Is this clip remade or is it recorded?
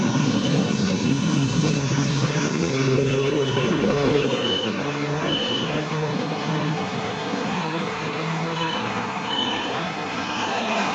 remade